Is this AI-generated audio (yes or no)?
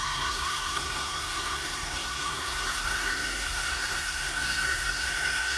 yes